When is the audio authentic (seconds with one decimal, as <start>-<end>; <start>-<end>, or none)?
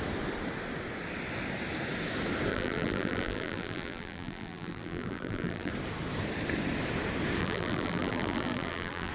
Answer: 0.0-2.5; 5.7-7.4